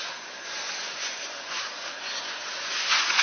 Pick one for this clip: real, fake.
fake